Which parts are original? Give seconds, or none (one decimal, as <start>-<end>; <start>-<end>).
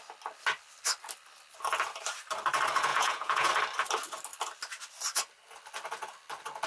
0.0-2.9; 3.5-6.7